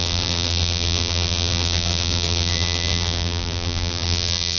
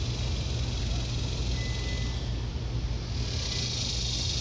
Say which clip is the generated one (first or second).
first